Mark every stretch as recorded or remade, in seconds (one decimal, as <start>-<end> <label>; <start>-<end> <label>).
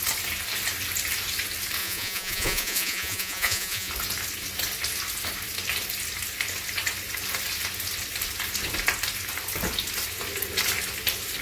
0.0-1.8 recorded; 1.8-3.9 remade; 3.9-11.4 recorded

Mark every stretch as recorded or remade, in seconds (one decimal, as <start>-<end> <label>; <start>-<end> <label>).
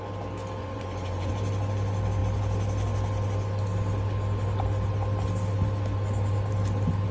0.0-0.6 recorded; 0.6-1.3 remade; 1.3-7.1 recorded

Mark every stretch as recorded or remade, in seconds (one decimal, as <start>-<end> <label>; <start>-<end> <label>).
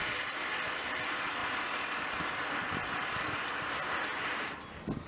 0.0-5.1 recorded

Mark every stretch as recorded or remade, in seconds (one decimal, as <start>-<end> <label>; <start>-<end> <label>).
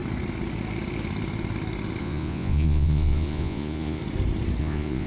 0.0-2.0 recorded; 2.0-4.0 remade; 4.0-4.6 recorded; 4.6-5.1 remade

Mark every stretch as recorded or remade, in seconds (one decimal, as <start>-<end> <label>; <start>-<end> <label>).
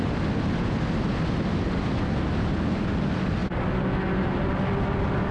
0.0-5.3 recorded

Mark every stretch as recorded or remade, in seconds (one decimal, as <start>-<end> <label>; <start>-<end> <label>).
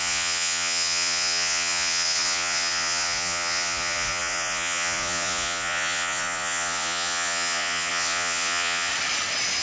0.0-8.9 remade; 8.9-9.6 recorded